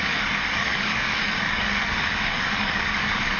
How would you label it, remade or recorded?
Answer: remade